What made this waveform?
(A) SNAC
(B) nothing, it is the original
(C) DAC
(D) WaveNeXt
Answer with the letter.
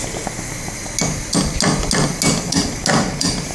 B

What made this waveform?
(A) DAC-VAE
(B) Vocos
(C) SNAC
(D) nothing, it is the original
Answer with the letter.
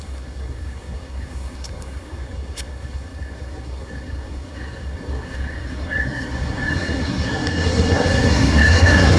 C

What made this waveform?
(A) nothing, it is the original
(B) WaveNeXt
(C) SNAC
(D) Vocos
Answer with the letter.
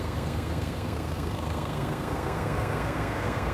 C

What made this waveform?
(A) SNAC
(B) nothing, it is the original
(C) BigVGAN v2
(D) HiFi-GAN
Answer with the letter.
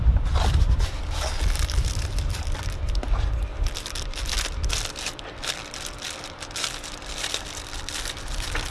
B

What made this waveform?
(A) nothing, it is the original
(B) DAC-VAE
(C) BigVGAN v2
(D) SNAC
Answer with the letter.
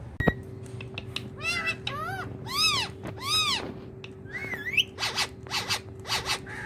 A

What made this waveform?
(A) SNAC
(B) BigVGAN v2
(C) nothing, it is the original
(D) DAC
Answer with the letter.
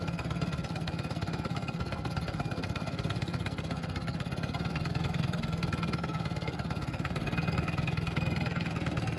A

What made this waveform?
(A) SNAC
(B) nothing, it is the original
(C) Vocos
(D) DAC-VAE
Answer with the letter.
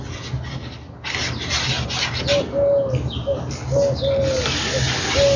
B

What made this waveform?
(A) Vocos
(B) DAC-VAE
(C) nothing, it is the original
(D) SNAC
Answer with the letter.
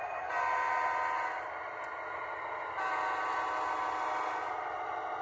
C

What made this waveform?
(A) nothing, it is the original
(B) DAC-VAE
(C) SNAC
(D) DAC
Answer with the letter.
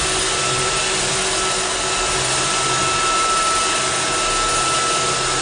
A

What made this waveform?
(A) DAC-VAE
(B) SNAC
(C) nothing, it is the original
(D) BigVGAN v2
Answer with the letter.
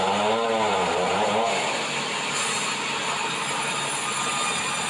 C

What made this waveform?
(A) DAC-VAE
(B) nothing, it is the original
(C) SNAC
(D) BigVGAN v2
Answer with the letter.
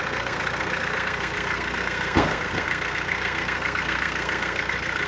C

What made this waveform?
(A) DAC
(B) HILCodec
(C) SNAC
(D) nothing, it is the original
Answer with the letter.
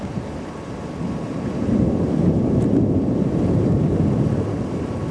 D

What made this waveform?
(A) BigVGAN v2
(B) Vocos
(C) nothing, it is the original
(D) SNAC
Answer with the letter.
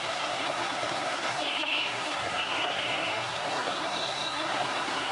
D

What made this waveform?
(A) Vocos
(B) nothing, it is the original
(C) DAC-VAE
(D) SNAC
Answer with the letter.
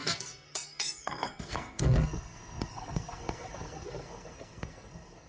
D